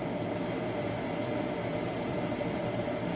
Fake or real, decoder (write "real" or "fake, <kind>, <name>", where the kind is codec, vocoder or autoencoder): fake, vocoder, BigVGAN v2